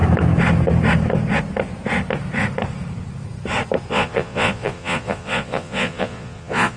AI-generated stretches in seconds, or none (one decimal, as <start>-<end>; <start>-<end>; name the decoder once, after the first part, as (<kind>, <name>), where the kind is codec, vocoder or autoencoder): 3.9-6.8 (vocoder, Vocos)